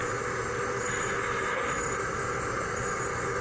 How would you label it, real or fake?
real